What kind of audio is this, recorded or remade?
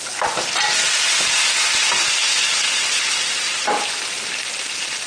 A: recorded